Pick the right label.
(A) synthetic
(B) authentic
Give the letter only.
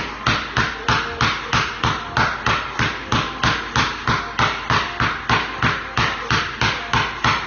B